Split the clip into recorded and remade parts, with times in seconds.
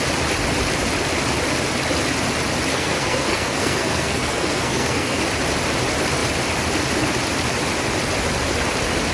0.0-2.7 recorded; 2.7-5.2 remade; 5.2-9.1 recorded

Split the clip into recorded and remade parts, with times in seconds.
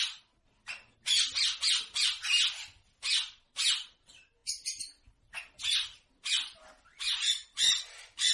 0.0-8.3 recorded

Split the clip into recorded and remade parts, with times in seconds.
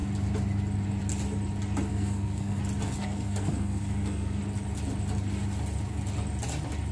0.0-1.9 recorded; 1.9-2.6 remade; 2.6-3.0 recorded; 3.0-4.4 remade; 4.4-6.9 recorded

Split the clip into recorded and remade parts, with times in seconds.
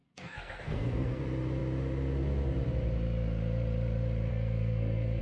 0.0-1.2 remade; 1.2-4.3 recorded; 4.3-5.2 remade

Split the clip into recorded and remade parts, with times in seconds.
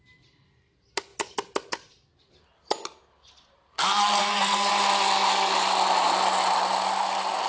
0.0-4.2 recorded; 4.2-4.7 remade; 4.7-7.5 recorded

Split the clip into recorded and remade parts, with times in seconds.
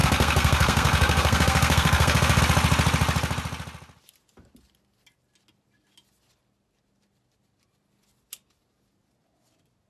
0.0-2.4 remade; 2.4-9.9 recorded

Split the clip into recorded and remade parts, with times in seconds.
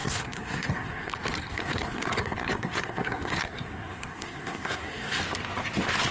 0.0-1.1 remade; 1.1-1.5 recorded; 1.5-5.2 remade; 5.2-6.1 recorded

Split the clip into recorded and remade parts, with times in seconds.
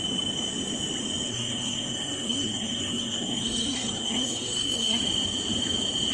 0.0-1.3 recorded; 1.3-5.0 remade; 5.0-6.1 recorded